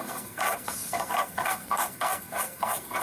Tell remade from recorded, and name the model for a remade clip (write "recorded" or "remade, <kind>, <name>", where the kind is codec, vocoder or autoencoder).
remade, codec, SNAC